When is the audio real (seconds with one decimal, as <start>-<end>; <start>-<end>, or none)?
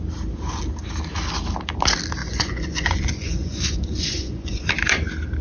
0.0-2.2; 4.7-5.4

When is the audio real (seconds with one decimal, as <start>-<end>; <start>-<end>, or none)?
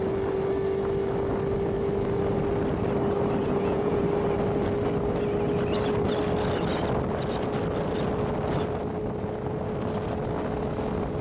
0.0-3.4; 4.0-11.2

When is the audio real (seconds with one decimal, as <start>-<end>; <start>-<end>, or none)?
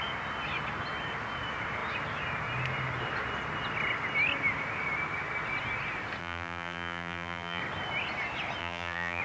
0.0-6.2; 7.6-8.6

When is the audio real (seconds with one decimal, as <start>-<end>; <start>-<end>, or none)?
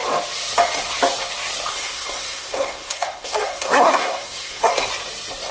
0.0-1.7; 4.7-5.5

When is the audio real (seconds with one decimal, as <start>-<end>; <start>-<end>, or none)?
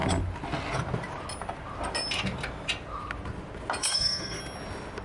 0.0-3.8; 4.4-5.0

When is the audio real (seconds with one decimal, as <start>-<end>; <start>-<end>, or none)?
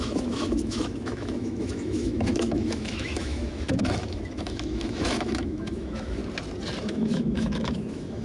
6.2-6.8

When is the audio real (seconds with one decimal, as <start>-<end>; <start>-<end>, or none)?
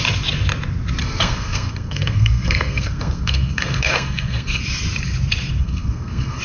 0.0-1.0; 4.6-5.6